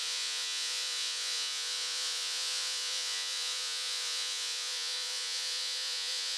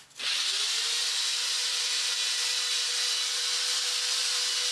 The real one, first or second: second